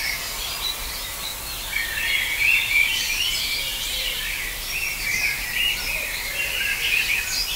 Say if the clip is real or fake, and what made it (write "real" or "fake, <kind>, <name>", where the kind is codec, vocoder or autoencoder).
fake, vocoder, BigVGAN v2